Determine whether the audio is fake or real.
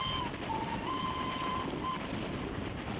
fake